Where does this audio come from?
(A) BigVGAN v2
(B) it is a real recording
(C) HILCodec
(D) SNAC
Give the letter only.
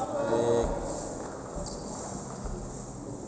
B